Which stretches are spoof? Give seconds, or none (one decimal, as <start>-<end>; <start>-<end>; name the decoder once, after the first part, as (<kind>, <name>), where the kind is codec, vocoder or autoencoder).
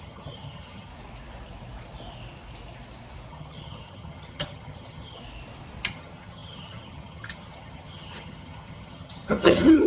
0.0-0.9 (vocoder, HiFi-GAN); 3.3-5.2; 5.9-9.9